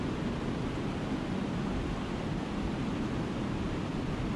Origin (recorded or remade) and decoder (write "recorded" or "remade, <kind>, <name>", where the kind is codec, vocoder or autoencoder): recorded